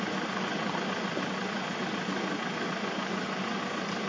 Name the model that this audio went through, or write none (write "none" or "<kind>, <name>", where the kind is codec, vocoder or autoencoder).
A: none